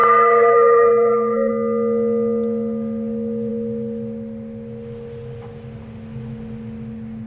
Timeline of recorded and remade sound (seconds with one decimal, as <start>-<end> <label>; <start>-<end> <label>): 0.0-1.5 remade; 1.5-7.3 recorded